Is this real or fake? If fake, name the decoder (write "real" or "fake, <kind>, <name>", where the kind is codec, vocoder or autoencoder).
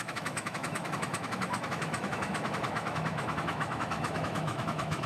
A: fake, autoencoder, DAC-VAE